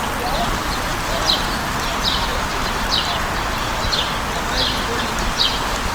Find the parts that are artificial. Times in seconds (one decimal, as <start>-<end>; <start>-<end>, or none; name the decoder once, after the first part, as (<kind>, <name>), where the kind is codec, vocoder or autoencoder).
2.3-3.8 (vocoder, BigVGAN v2); 4.9-5.5